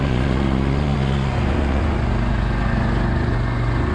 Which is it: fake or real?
fake